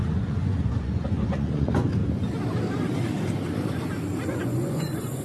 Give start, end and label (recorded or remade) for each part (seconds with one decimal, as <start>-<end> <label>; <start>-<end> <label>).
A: 0.0-2.0 remade; 2.0-4.3 recorded; 4.3-5.2 remade